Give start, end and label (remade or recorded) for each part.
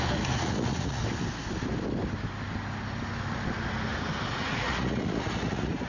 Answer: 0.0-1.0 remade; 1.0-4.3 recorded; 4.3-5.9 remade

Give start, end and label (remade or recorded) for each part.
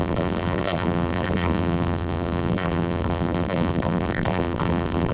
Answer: 0.0-5.1 remade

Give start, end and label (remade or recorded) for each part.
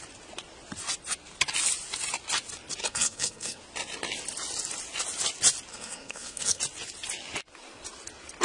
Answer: 0.0-2.8 recorded; 2.8-3.6 remade; 3.6-5.7 recorded; 5.7-6.6 remade; 6.6-8.4 recorded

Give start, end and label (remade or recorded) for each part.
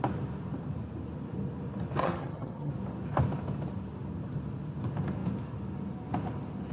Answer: 0.0-2.0 recorded; 2.0-2.7 remade; 2.7-6.7 recorded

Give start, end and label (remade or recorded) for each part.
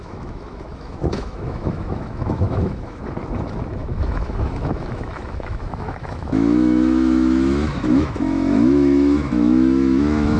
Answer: 0.0-3.0 remade; 3.0-3.7 recorded; 3.7-10.4 remade